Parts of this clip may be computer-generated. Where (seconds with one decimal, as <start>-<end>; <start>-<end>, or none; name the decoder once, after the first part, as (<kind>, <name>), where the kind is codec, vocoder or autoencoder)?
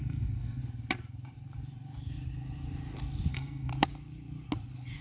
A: 0.0-0.6 (codec, SNAC); 3.3-3.7